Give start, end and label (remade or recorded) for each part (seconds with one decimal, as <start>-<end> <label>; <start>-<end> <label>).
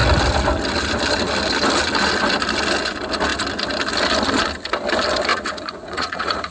0.0-5.3 recorded; 5.3-6.5 remade